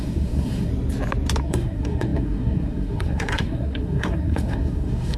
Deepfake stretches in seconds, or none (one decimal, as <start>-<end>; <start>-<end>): 0.0-0.7; 1.4-5.2